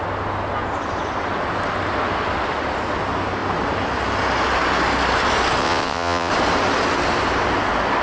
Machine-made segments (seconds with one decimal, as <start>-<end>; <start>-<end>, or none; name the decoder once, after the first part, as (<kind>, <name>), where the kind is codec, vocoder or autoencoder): 5.6-6.3 (vocoder, WaveNeXt)